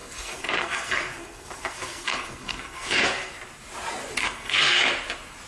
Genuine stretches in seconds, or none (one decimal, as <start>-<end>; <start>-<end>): 3.3-4.2; 4.8-5.5